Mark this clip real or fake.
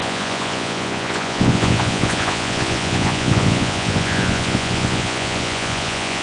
fake